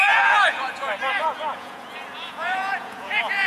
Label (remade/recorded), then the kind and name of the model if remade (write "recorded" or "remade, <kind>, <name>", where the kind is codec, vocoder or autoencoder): remade, vocoder, Vocos